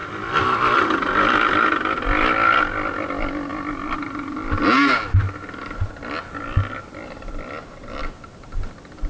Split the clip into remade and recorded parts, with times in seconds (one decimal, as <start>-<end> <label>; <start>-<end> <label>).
0.0-9.1 recorded